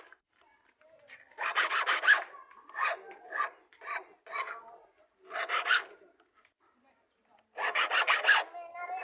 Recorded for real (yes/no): yes